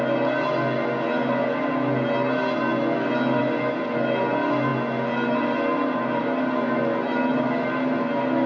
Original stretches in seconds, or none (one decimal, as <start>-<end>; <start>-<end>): 0.0-8.5